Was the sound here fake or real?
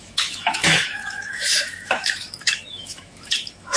fake